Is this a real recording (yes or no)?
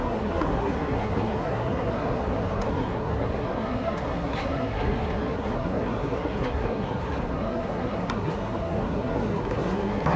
no